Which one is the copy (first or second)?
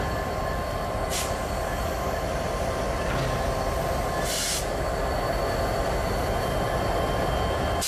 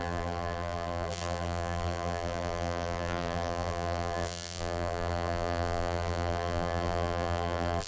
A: second